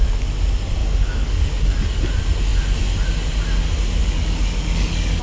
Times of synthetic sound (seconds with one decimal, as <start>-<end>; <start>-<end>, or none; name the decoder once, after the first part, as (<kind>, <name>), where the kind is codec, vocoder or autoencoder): 0.8-2.0 (codec, DAC); 4.0-5.2